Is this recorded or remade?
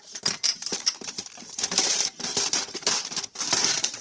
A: remade